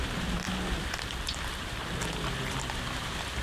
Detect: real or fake fake